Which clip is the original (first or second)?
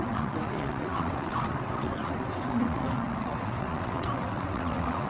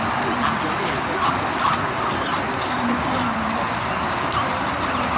second